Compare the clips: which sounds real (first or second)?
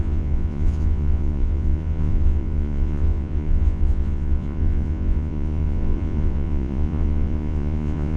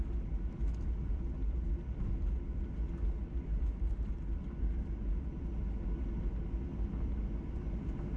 second